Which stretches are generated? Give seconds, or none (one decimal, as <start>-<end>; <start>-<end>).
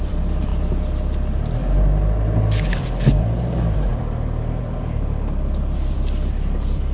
0.0-0.5; 2.7-6.9